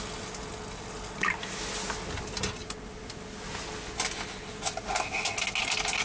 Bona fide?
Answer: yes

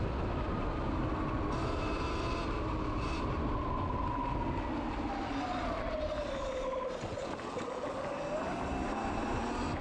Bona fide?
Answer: yes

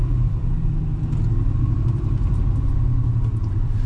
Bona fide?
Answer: no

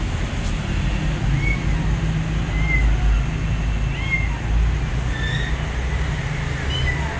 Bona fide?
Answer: yes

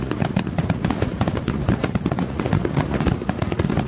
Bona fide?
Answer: no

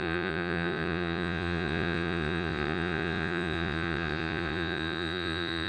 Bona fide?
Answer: no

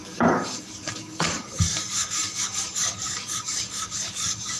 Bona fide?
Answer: no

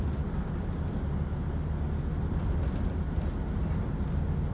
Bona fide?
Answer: yes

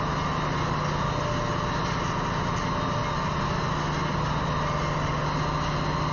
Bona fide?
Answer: yes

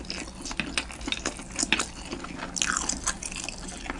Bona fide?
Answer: yes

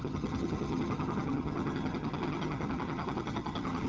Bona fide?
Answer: no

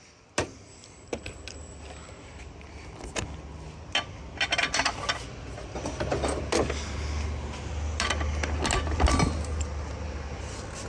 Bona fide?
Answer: yes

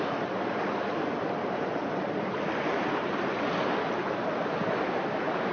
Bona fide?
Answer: yes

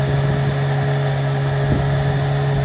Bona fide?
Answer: yes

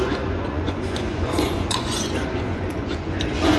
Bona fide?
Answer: no